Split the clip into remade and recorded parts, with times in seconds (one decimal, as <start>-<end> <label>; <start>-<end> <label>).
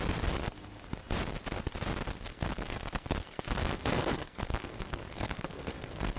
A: 0.0-2.3 recorded; 2.3-6.2 remade